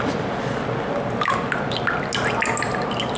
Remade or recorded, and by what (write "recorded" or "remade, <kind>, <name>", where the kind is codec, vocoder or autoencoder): recorded